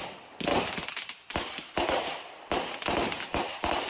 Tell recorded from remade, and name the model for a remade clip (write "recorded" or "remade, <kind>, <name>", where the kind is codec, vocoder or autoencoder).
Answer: recorded